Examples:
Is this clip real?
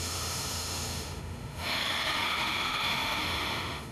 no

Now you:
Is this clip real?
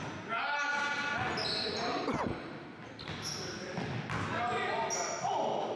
yes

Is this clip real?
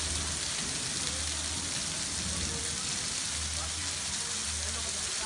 yes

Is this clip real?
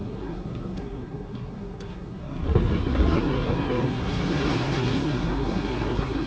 no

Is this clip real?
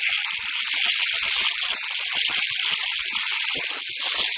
yes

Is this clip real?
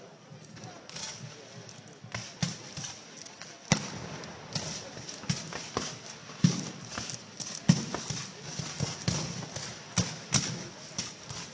yes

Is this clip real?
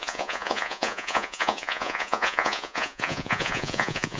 no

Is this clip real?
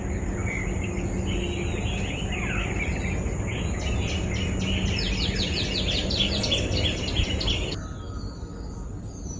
yes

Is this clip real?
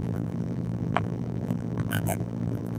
no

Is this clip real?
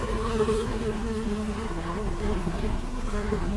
no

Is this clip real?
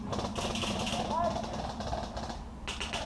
yes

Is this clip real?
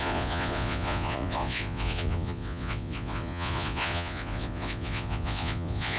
no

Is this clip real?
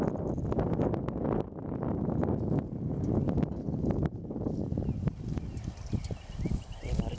yes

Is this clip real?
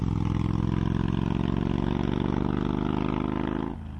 yes